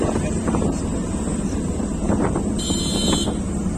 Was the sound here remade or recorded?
recorded